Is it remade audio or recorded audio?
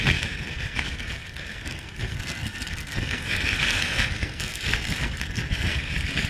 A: remade